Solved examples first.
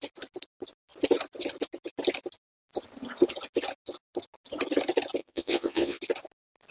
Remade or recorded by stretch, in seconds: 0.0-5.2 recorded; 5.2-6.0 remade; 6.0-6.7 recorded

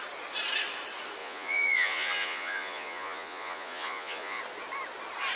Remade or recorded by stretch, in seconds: 0.0-1.2 recorded; 1.2-4.4 remade; 4.4-5.4 recorded

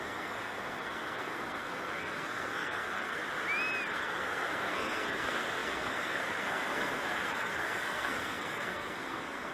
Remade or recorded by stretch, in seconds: 0.0-3.2 remade; 3.2-3.9 recorded; 3.9-9.5 remade

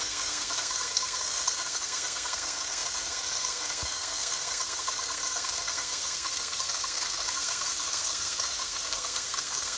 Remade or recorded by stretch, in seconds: 0.0-9.8 remade

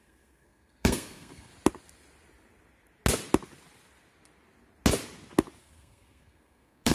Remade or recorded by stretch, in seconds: 0.0-1.5 remade; 1.5-5.6 recorded; 5.6-6.9 remade

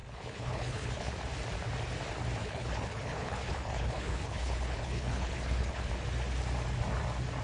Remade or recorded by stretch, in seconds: 0.0-1.1 remade; 1.1-2.4 recorded; 2.4-5.9 remade; 5.9-7.4 recorded